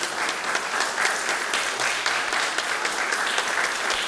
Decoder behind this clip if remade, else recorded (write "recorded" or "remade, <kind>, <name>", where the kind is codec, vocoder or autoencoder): recorded